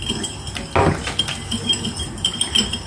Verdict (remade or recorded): recorded